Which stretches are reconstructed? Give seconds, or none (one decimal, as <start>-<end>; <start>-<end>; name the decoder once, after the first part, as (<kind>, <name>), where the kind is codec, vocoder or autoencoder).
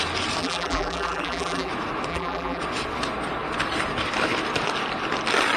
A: 0.4-1.7 (vocoder, BigVGAN v2); 2.1-2.6